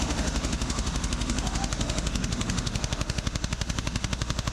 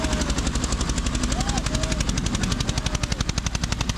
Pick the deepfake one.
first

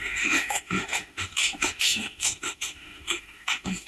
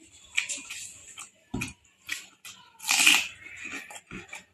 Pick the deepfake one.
first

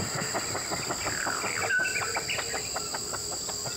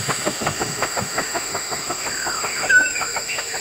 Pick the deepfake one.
second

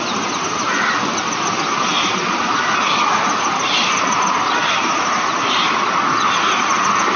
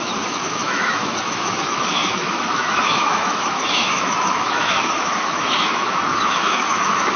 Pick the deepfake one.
second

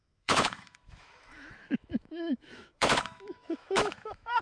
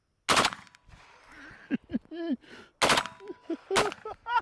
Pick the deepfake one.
first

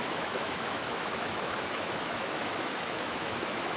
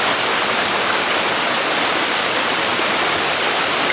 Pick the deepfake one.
first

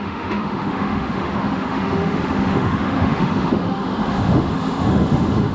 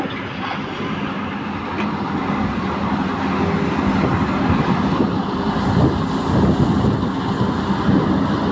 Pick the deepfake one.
first